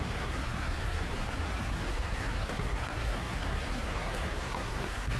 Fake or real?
fake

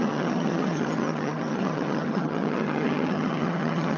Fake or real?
fake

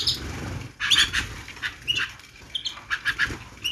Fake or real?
real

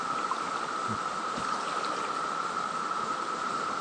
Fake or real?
fake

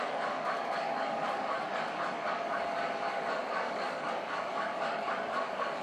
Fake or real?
fake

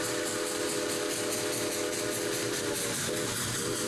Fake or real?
real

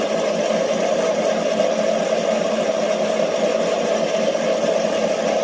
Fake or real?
real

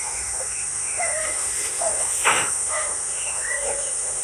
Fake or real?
fake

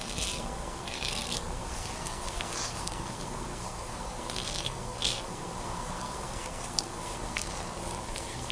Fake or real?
fake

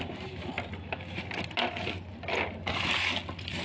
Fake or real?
real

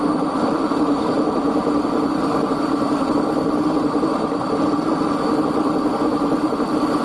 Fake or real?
fake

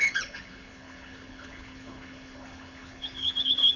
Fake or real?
fake